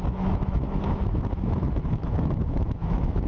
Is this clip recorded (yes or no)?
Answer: no